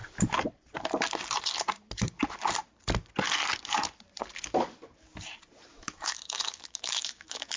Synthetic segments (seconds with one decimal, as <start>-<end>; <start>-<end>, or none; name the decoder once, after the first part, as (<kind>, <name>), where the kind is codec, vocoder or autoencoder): 5.7-7.6 (autoencoder, DAC-VAE)